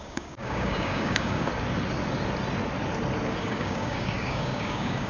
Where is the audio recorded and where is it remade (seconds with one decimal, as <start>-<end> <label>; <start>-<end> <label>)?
0.0-1.5 remade; 1.5-3.4 recorded; 3.4-5.1 remade